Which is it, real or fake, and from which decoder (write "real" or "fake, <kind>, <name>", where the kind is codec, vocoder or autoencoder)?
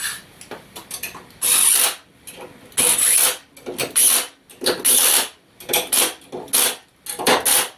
real